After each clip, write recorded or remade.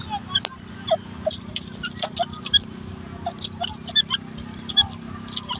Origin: recorded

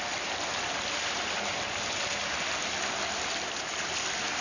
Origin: recorded